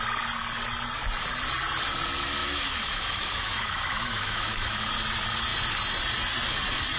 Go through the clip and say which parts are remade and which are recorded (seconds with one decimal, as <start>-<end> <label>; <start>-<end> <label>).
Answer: 0.0-2.4 recorded; 2.4-4.9 remade; 4.9-7.0 recorded